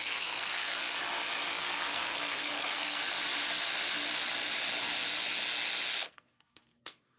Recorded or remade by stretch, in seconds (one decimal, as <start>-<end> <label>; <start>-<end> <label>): 0.0-0.8 remade; 0.8-1.5 recorded; 1.5-3.0 remade; 3.0-6.0 recorded; 6.0-7.2 remade